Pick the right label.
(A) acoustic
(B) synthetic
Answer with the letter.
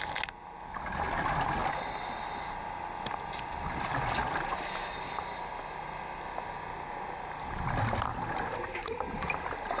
A